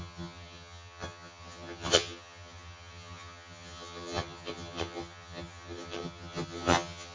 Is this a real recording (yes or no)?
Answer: no